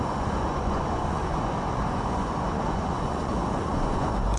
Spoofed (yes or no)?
yes